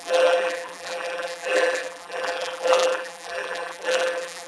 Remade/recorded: remade